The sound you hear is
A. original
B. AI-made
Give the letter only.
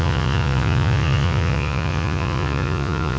B